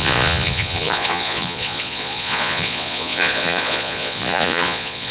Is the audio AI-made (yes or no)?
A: yes